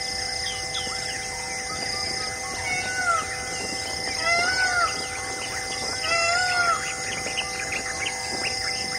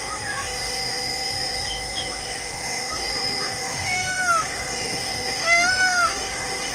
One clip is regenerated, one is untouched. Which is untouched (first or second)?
first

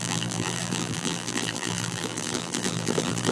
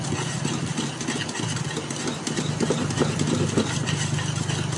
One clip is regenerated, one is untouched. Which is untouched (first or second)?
second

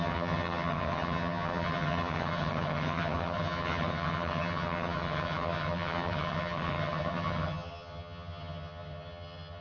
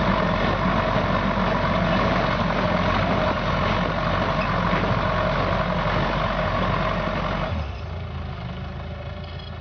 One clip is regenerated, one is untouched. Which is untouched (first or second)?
second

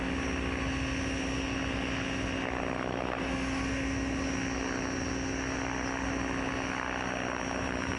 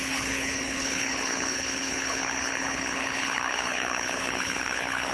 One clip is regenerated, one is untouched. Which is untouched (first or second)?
first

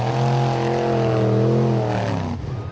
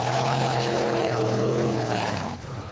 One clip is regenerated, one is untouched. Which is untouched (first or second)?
first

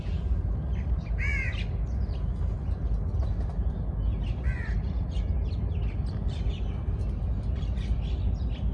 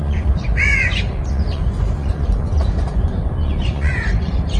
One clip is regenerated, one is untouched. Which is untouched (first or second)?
first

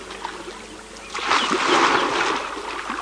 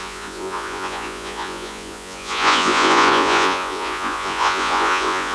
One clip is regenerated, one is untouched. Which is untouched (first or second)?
first